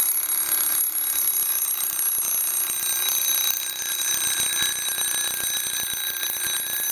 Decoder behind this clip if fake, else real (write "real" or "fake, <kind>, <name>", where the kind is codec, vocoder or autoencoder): real